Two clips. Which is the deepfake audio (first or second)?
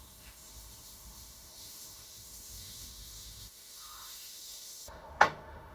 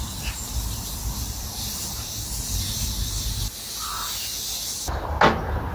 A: first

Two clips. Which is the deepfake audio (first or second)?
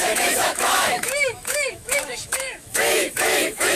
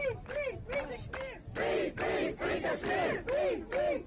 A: first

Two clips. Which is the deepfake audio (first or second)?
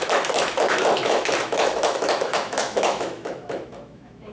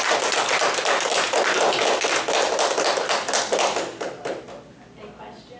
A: first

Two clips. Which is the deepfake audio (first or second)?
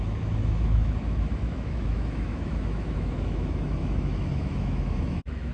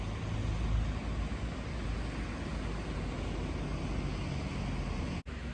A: first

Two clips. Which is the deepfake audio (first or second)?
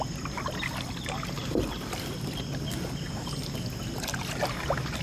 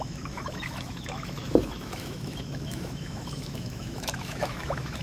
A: second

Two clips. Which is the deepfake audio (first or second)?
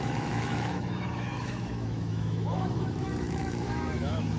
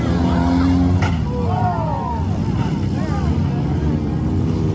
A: first